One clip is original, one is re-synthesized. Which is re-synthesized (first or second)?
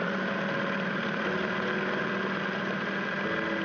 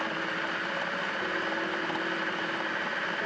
second